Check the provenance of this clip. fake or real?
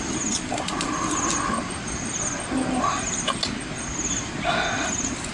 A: real